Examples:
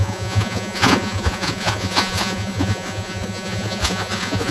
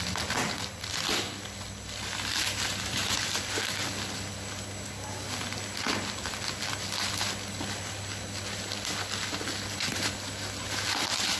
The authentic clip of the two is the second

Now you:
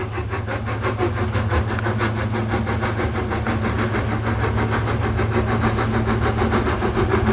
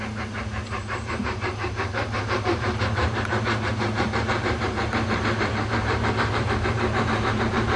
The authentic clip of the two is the first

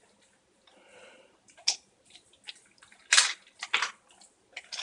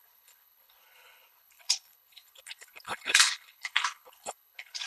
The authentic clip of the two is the first